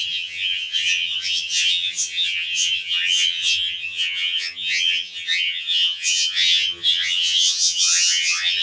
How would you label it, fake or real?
fake